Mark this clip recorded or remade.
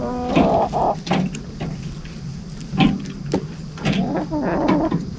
remade